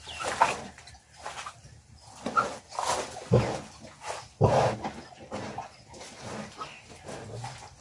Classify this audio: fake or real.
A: real